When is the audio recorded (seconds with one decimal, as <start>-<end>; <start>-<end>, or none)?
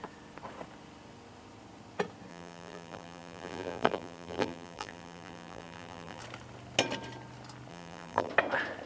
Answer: 0.0-2.3; 6.2-7.7; 8.3-8.9